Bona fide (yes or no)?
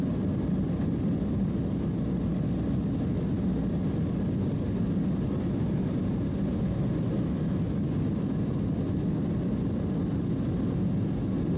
yes